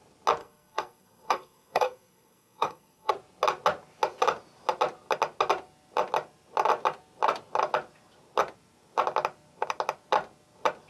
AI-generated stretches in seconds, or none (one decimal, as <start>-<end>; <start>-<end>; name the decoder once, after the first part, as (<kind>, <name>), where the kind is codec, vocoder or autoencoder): 0.4-3.1 (codec, SNAC)